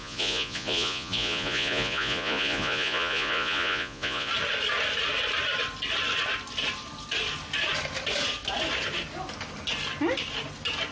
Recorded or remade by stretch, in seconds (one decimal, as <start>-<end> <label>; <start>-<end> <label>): 0.0-4.3 remade; 4.3-10.9 recorded